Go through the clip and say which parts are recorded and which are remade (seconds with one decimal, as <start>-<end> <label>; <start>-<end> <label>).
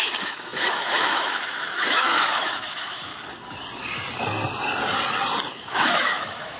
0.0-3.1 remade; 3.1-5.5 recorded; 5.5-6.6 remade